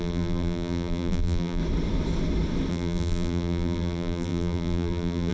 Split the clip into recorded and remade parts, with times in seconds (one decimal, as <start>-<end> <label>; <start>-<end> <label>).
0.0-1.6 remade; 1.6-2.7 recorded; 2.7-5.3 remade